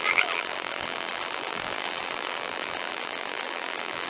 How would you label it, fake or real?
fake